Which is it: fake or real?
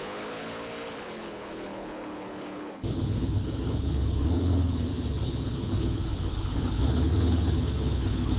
fake